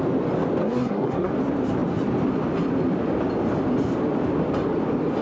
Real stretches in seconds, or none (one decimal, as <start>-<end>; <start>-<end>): 0.0-0.6; 1.3-5.2